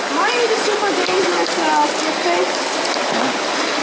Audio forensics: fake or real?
real